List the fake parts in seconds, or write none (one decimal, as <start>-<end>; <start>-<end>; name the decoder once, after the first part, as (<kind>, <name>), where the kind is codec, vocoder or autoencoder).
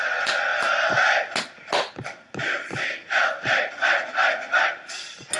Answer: none